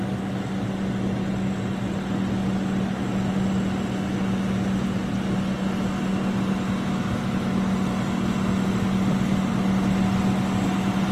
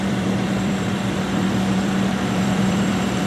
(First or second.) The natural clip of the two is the first